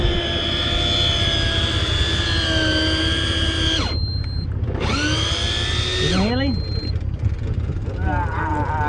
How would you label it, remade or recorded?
recorded